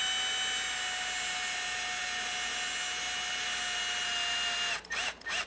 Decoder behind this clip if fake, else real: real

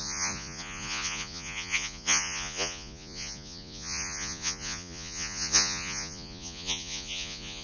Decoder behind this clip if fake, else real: fake, vocoder, Vocos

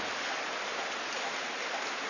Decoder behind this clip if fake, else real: real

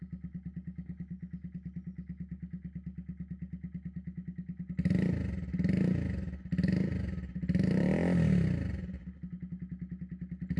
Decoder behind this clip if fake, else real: real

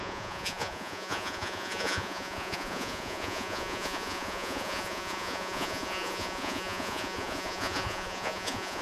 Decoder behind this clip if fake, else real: fake, vocoder, Vocos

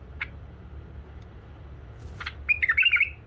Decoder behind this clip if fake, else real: real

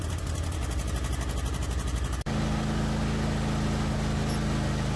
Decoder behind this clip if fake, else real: real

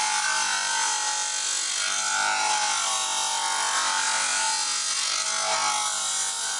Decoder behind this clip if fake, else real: real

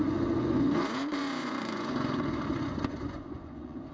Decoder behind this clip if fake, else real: fake, vocoder, Vocos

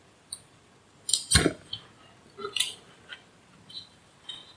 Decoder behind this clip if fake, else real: real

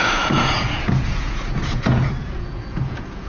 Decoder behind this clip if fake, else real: fake, vocoder, Vocos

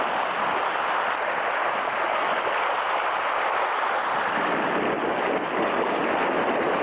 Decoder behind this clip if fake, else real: real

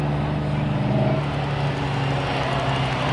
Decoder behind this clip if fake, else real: real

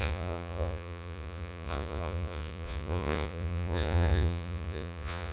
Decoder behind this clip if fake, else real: fake, vocoder, Vocos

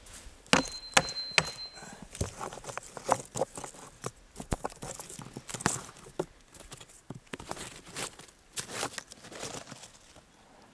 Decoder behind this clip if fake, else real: real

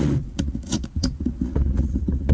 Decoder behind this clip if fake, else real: fake, vocoder, Vocos